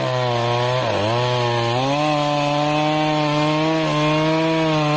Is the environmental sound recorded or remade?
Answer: recorded